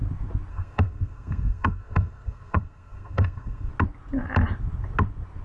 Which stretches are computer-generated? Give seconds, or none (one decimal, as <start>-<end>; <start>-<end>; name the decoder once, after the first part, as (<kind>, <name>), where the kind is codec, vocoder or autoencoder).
0.5-3.7 (codec, SNAC)